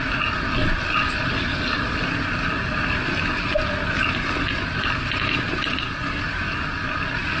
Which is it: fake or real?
real